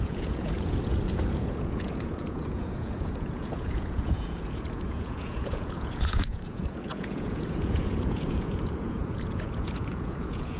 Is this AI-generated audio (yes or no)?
yes